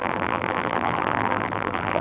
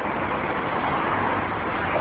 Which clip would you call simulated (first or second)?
first